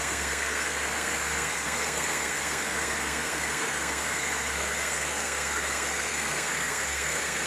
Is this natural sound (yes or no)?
no